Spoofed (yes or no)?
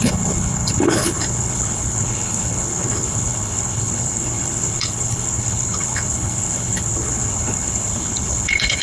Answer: yes